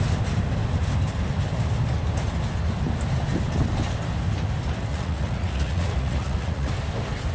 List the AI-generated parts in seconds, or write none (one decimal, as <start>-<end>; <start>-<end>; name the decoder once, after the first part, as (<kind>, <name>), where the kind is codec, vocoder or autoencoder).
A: 4.9-6.7 (vocoder, Vocos)